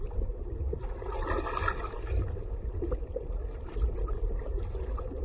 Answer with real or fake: real